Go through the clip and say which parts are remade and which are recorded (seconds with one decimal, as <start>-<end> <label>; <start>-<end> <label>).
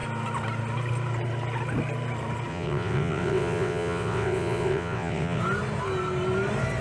0.0-2.5 recorded; 2.5-5.4 remade; 5.4-6.8 recorded